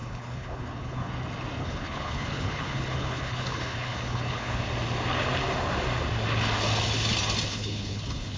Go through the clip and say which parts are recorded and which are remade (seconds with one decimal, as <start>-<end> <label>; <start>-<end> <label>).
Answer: 0.0-1.1 remade; 1.1-1.6 recorded; 1.6-4.6 remade; 4.6-7.5 recorded; 7.5-8.4 remade